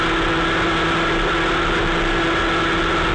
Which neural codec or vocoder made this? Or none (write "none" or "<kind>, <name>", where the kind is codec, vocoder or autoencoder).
none